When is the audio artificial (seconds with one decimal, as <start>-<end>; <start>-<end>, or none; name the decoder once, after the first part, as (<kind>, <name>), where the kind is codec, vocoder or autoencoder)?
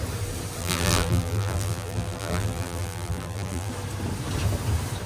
0.6-3.7 (vocoder, BigVGAN v2)